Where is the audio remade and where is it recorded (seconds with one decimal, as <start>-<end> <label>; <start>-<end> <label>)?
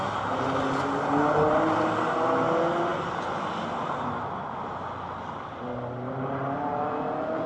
0.0-7.5 recorded